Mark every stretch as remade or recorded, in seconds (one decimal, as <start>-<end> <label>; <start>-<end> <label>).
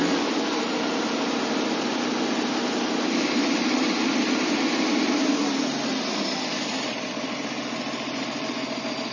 0.0-9.1 recorded